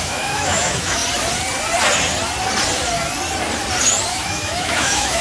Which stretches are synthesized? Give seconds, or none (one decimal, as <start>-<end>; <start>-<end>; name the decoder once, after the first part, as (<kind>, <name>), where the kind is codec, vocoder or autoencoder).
0.0-1.0 (autoencoder, DAC-VAE); 4.1-5.2